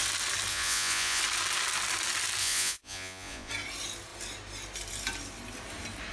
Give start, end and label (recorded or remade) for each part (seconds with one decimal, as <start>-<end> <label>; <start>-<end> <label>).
0.0-0.5 recorded; 0.5-1.2 remade; 1.2-2.4 recorded; 2.4-3.5 remade; 3.5-6.1 recorded